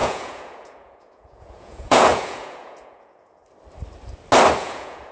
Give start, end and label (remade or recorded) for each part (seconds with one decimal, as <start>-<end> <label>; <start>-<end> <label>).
0.0-3.4 remade; 3.4-4.6 recorded; 4.6-5.1 remade